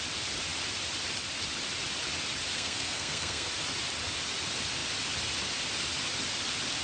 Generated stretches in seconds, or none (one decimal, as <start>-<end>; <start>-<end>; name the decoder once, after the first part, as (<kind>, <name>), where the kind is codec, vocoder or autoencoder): 2.5-3.5 (codec, SNAC)